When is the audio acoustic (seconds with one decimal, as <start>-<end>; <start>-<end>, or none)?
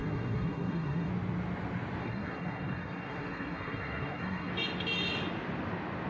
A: 1.1-2.0; 4.5-6.1